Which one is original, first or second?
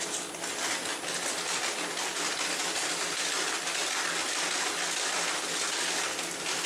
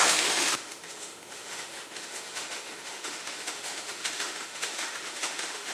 first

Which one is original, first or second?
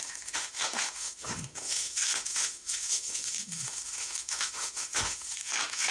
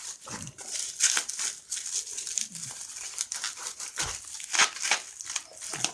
second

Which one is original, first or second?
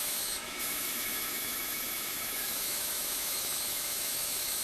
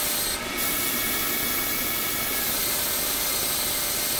second